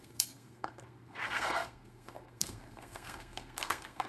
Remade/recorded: remade